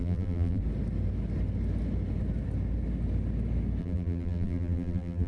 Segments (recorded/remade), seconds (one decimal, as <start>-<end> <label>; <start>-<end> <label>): 0.0-0.6 remade; 0.6-3.8 recorded; 3.8-5.3 remade